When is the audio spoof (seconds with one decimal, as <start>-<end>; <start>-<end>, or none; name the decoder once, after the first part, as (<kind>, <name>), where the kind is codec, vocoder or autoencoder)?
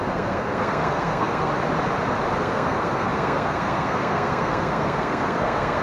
0.0-1.5 (codec, SNAC); 2.4-5.8